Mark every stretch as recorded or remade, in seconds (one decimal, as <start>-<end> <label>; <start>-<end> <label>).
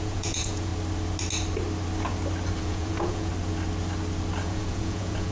0.0-0.7 remade; 0.7-2.6 recorded; 2.6-3.3 remade; 3.3-4.4 recorded; 4.4-5.3 remade